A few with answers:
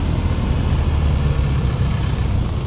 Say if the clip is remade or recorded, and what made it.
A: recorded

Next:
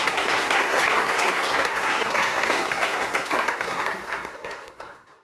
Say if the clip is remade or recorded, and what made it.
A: remade, codec, SNAC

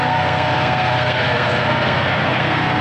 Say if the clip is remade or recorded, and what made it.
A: remade, codec, SNAC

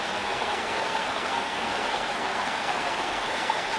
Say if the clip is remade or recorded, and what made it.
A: remade, codec, SNAC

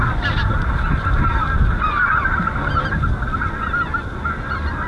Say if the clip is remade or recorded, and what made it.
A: recorded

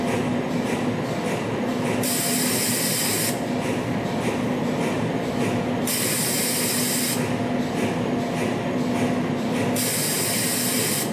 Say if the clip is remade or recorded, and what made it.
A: recorded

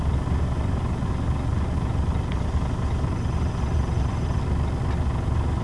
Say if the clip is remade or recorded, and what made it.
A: recorded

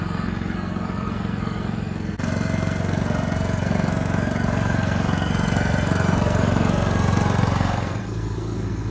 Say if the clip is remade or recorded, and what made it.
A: remade, codec, SNAC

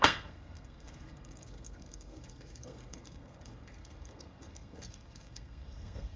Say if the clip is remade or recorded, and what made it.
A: remade, codec, SNAC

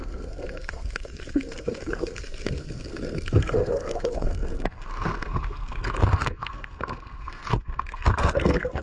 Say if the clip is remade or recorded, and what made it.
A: remade, codec, SNAC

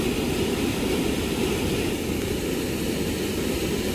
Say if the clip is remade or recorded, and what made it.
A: recorded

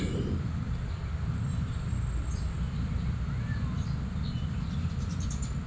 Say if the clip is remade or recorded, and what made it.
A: recorded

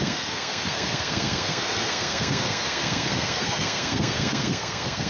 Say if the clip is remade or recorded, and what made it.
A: remade, codec, SNAC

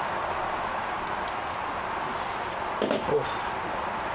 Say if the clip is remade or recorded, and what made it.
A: recorded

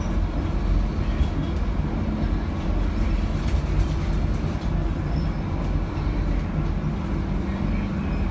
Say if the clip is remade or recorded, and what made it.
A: recorded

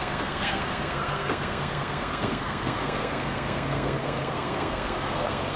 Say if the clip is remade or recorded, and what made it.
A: remade, codec, SNAC